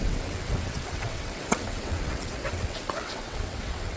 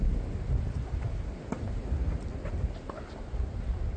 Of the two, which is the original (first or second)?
second